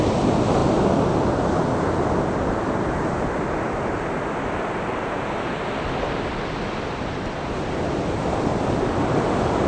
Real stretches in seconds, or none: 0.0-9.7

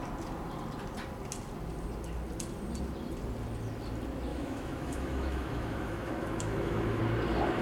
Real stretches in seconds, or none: 0.0-4.3; 7.0-7.6